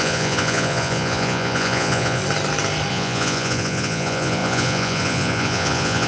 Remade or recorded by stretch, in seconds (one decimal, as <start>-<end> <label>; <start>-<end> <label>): 0.0-2.2 remade; 2.2-2.9 recorded; 2.9-6.1 remade